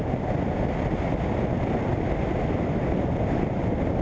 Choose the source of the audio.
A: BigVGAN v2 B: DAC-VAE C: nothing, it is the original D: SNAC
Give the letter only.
C